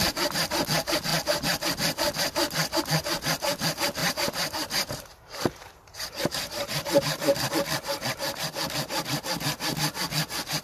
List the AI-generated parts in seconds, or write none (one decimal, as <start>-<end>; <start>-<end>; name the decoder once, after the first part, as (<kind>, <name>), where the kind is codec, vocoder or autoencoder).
4.0-7.5 (vocoder, BigVGAN v2)